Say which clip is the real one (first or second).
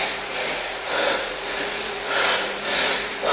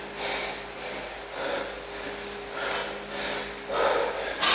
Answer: second